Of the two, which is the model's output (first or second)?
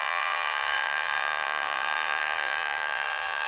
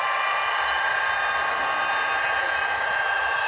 first